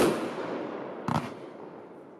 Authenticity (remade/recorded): recorded